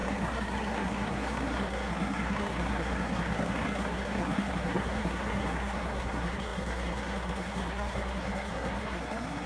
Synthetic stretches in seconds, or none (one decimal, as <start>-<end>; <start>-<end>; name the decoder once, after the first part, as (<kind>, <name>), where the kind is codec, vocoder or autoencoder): 0.0-9.5 (codec, SNAC)